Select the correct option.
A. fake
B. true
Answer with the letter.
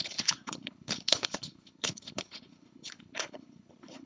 A